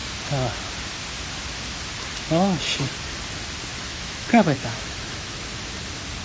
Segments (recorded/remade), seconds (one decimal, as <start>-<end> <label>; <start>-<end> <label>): 0.0-3.7 recorded; 3.7-5.4 remade; 5.4-6.2 recorded

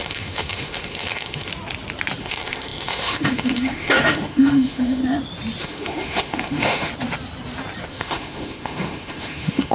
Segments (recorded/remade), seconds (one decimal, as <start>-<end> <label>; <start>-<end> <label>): 0.0-1.5 remade; 1.5-2.2 recorded; 2.2-5.0 remade; 5.0-5.6 recorded; 5.6-6.9 remade; 6.9-7.9 recorded; 7.9-9.7 remade